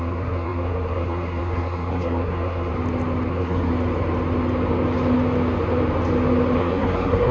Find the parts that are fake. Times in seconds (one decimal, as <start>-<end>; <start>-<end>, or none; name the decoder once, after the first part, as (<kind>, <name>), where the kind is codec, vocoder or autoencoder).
0.0-2.7 (codec, SNAC); 3.3-3.7; 6.6-7.3

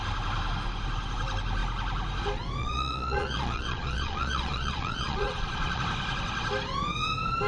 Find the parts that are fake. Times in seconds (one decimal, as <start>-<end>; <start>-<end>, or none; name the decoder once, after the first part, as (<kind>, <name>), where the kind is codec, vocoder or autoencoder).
2.6-5.8 (vocoder, Vocos)